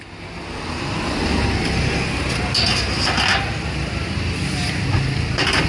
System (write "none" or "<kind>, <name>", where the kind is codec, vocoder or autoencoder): none